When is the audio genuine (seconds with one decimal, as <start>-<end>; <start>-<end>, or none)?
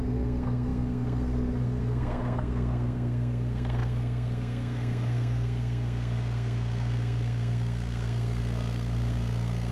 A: none